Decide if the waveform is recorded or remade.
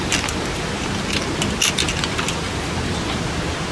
recorded